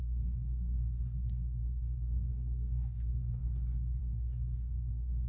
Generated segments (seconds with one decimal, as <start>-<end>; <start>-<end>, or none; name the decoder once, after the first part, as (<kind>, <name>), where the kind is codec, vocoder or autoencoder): 0.0-3.4 (codec, SNAC); 4.0-5.3